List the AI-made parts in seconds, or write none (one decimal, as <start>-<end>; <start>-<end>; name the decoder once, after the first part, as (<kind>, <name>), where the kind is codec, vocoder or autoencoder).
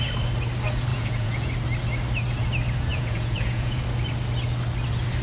0.9-1.5 (vocoder, Vocos); 2.9-3.8